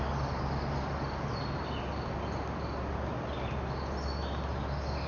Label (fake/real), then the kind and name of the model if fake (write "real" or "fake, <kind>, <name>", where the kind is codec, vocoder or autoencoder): real